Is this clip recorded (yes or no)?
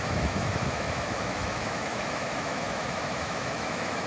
no